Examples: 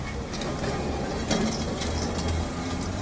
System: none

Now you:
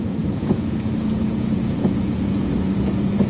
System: vocoder, Vocos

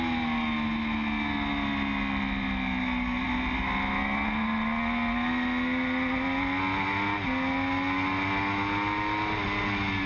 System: none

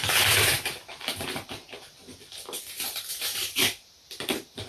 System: vocoder, BigVGAN v2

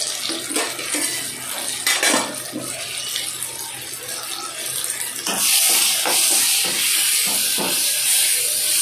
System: none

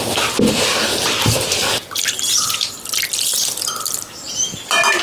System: none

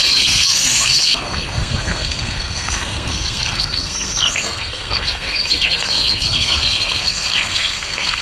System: codec, SNAC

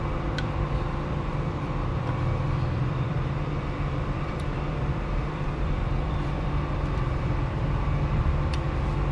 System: vocoder, BigVGAN v2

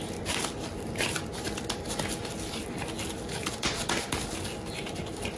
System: none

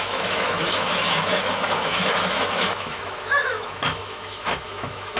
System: autoencoder, DAC-VAE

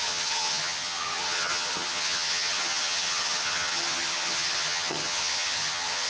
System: vocoder, HiFi-GAN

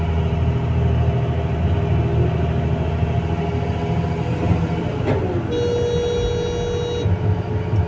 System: none